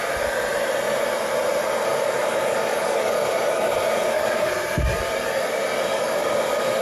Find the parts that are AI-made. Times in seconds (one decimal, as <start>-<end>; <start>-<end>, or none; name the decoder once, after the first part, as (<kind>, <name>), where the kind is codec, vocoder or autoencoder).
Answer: 1.9-4.5 (codec, DAC); 5.9-6.8